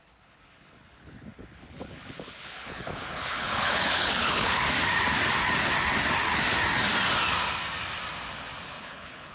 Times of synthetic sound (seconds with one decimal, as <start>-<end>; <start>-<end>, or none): 0.0-4.6; 8.8-9.3